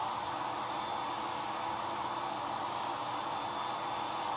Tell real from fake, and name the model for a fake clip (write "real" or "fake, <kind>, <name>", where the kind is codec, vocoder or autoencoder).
real